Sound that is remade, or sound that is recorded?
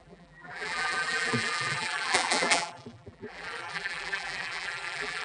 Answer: remade